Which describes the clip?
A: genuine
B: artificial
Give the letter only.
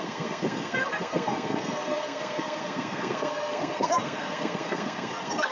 B